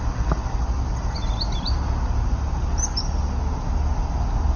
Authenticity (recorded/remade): recorded